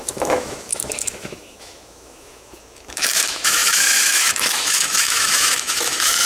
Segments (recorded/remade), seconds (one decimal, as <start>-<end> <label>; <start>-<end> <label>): 0.0-6.3 remade